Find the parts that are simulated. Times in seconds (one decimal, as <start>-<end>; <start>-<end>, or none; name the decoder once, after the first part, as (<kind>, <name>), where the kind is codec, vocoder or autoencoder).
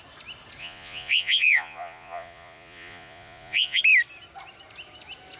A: 0.6-3.8 (vocoder, Vocos)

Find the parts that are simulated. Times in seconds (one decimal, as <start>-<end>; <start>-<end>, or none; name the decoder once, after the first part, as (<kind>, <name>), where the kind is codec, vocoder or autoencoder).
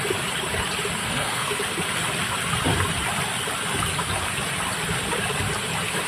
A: 1.0-1.6 (codec, SNAC)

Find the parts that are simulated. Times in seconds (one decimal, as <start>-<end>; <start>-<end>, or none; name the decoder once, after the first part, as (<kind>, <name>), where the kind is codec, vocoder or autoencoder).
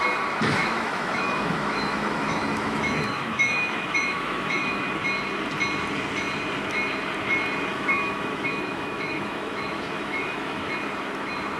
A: 0.6-4.8 (autoencoder, DAC-VAE); 7.7-10.7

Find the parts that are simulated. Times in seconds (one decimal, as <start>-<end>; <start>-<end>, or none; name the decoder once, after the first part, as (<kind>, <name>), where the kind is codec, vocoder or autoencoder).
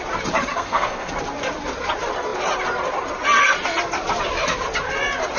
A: 0.5-1.1 (codec, SNAC)